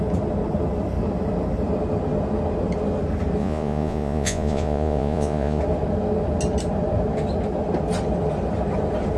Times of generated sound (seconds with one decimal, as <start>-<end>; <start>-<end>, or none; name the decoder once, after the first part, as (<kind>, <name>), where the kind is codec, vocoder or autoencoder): 3.4-5.6 (vocoder, Vocos)